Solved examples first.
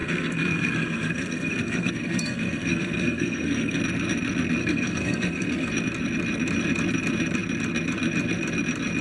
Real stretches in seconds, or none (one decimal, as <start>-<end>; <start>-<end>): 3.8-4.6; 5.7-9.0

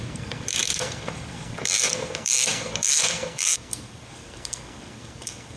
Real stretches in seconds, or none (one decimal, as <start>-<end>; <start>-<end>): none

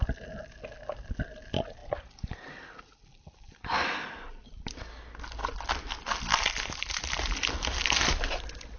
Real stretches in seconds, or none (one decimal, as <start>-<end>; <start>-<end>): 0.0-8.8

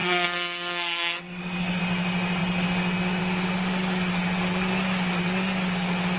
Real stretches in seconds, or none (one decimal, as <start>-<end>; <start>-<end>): 1.8-6.2

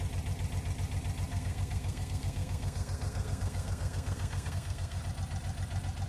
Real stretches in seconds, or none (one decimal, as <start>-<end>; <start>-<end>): 0.0-1.3; 5.0-6.1